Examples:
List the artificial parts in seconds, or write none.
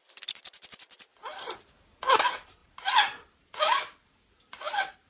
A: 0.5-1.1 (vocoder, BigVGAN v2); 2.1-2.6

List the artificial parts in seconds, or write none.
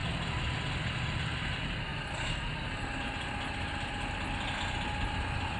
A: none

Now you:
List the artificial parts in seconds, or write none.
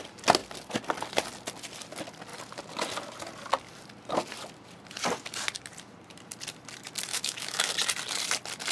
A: 7.1-7.7 (autoencoder, DAC-VAE)